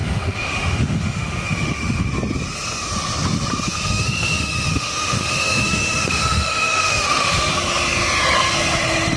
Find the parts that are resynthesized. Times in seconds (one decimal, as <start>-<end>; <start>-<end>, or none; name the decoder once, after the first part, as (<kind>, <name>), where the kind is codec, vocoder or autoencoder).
0.0-2.1 (autoencoder, DAC-VAE); 3.7-7.5